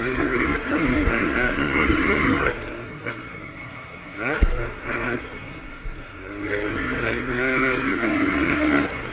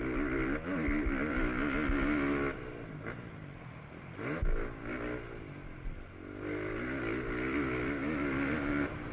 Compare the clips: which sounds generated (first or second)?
first